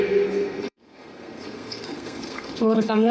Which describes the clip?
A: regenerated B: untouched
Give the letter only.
A